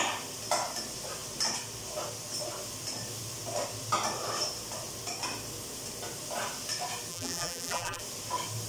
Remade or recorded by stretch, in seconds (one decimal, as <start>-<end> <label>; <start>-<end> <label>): 0.0-7.1 recorded; 7.1-8.0 remade; 8.0-8.7 recorded